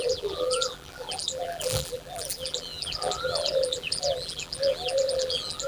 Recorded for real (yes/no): no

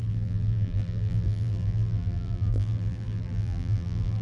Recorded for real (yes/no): no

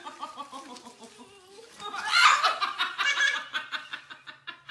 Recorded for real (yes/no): yes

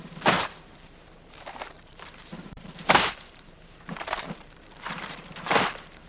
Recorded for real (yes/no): no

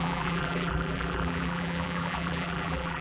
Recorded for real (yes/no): no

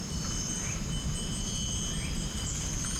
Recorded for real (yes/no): yes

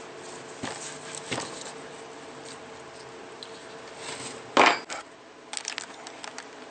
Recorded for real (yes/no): yes